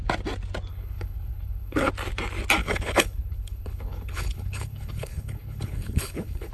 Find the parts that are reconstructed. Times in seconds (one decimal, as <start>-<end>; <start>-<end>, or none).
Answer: 0.7-1.9; 2.6-6.5